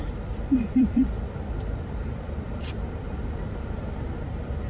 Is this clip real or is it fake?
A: fake